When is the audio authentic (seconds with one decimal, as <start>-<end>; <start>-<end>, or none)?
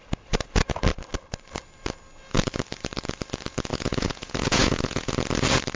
0.0-3.7; 5.1-5.8